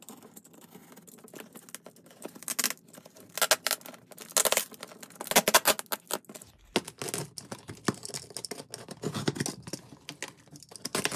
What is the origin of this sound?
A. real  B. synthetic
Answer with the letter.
A